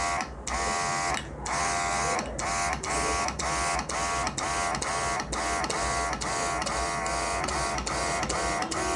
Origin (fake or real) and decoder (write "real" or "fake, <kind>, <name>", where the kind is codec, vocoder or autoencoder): real